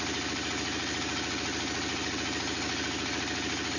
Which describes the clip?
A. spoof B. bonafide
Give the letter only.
B